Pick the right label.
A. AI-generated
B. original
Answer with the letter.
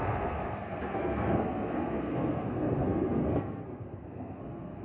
A